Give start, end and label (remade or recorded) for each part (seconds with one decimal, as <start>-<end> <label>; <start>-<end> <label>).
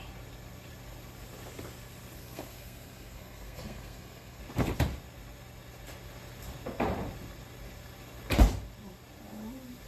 0.0-2.2 recorded; 2.2-4.4 remade; 4.4-9.9 recorded